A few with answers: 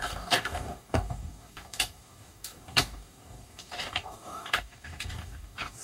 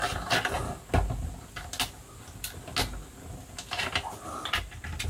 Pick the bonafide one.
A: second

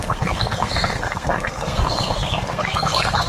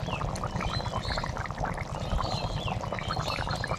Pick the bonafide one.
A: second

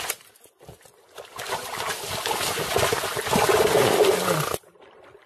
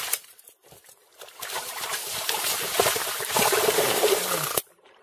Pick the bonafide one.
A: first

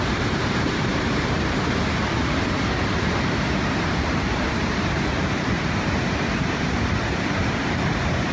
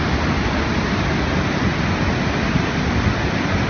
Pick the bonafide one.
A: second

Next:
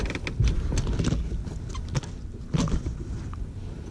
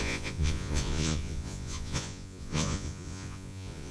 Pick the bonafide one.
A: first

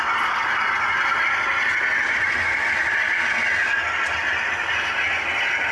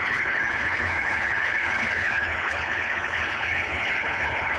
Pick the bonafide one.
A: first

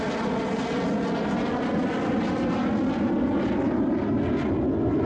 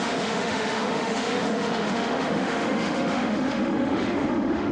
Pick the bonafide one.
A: first